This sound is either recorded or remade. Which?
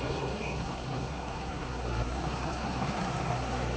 remade